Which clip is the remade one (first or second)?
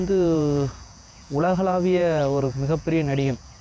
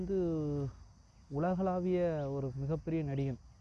first